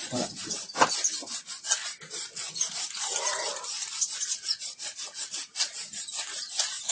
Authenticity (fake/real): real